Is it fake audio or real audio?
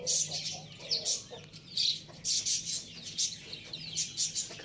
real